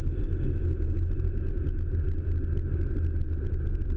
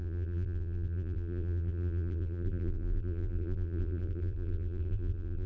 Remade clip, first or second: second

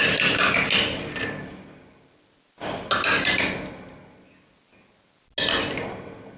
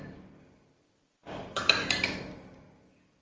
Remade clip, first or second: second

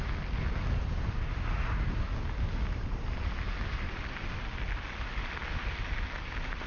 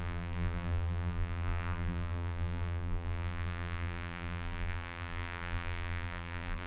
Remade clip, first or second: second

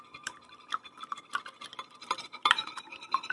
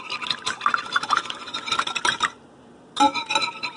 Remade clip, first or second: first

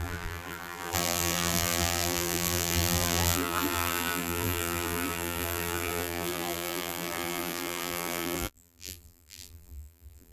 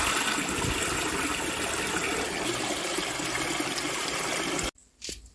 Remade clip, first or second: first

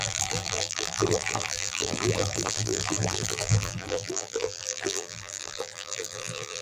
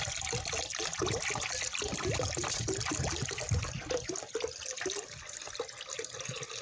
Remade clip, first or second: first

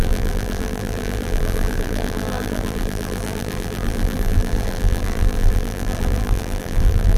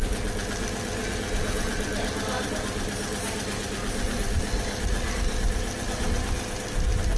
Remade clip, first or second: first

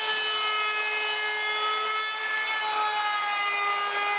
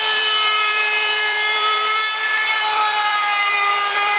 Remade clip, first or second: second